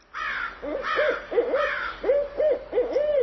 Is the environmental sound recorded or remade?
remade